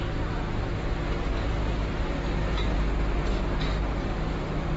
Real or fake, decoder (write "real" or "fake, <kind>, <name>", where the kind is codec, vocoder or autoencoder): real